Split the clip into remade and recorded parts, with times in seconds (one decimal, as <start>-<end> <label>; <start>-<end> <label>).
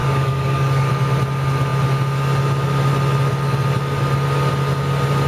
0.0-0.9 remade; 0.9-5.3 recorded